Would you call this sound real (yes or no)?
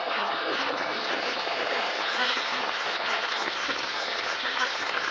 no